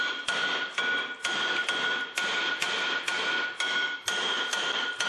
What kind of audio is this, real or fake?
real